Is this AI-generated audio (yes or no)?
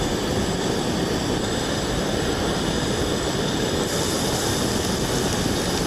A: no